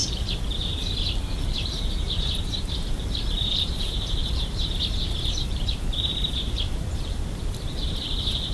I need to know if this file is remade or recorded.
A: remade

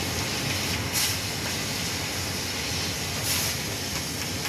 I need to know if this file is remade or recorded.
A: recorded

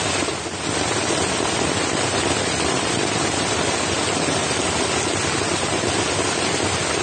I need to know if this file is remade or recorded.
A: recorded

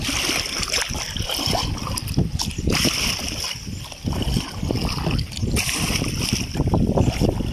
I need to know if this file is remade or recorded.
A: recorded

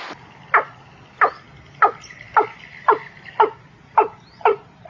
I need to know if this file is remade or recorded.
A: recorded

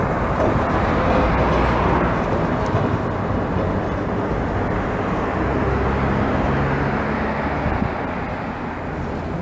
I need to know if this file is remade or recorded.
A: recorded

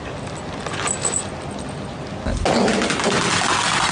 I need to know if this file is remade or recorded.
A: recorded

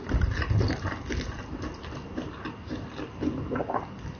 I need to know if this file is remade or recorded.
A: recorded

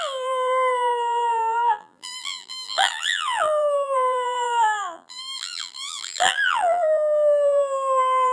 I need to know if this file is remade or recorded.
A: remade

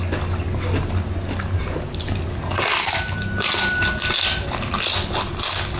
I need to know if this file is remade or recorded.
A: recorded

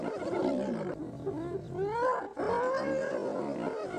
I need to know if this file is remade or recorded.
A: recorded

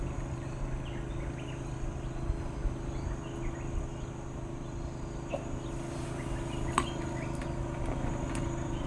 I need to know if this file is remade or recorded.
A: recorded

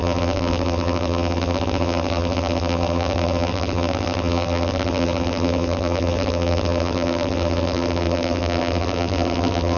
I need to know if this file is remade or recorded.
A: remade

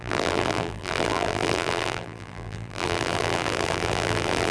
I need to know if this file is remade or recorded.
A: remade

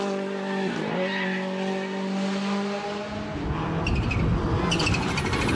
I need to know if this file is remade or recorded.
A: recorded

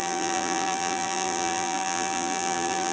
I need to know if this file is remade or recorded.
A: remade